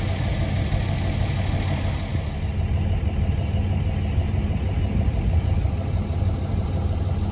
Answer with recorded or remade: recorded